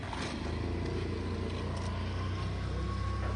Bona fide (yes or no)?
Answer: yes